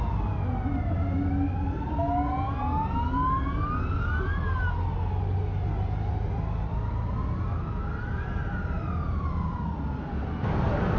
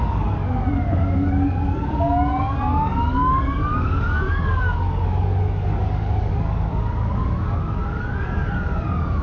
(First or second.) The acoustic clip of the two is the first